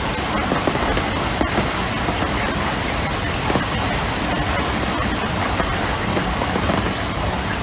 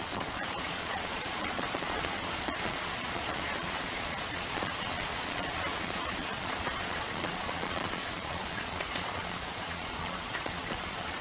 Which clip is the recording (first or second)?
first